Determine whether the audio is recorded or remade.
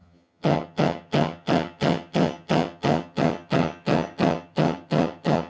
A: remade